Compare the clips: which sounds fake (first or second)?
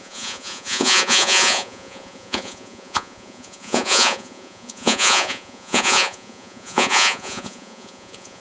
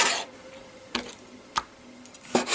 first